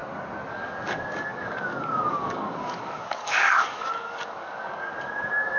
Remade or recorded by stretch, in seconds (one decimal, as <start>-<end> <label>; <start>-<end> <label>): 0.0-0.5 recorded; 0.5-5.6 remade